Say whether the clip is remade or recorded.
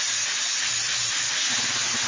recorded